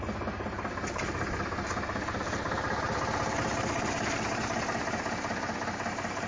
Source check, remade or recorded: recorded